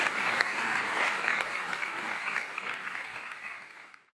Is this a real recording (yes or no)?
no